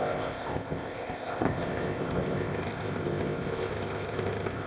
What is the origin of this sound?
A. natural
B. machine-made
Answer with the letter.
B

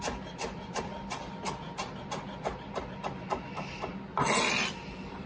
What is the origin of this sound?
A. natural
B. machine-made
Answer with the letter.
A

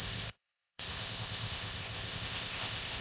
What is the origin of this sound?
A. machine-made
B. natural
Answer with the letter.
A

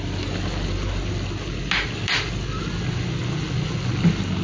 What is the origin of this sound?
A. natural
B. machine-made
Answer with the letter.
A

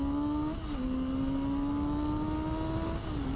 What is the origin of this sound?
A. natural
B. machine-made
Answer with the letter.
A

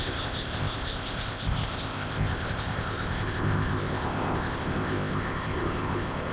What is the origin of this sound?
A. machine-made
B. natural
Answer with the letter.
A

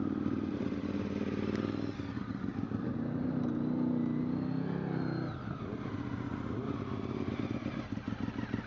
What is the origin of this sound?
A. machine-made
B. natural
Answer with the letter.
B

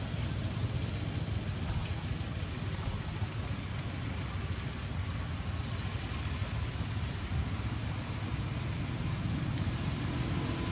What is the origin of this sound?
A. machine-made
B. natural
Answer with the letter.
B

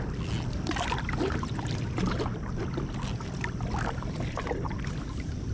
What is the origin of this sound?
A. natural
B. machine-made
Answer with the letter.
A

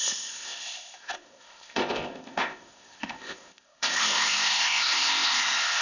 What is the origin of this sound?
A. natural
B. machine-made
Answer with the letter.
B